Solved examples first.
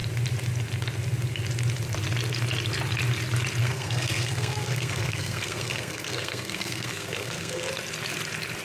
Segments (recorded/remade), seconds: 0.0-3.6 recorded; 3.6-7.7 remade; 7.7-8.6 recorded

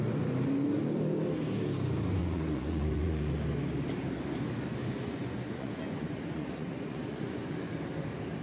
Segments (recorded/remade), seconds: 0.0-2.2 recorded; 2.2-3.3 remade; 3.3-4.8 recorded; 4.8-7.5 remade; 7.5-8.4 recorded

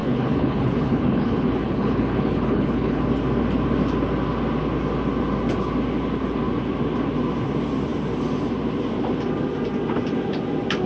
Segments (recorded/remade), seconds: 0.0-3.0 remade; 3.0-10.9 recorded

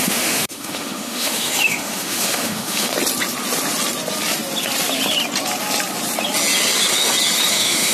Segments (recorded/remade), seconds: 0.0-2.9 remade; 2.9-7.5 recorded; 7.5-7.9 remade

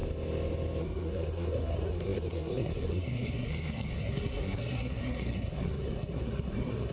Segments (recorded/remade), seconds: 0.0-0.8 recorded; 0.8-6.9 remade